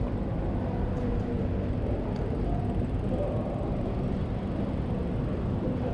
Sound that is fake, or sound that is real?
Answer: real